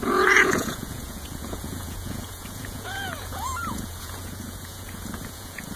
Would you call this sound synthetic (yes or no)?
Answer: yes